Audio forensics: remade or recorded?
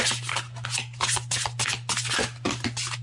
recorded